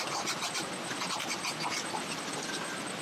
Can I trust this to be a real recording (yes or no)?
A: no